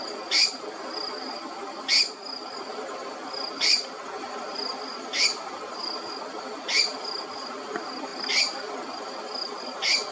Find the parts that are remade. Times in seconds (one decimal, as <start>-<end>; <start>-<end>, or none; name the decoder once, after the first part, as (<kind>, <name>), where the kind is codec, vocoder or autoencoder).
none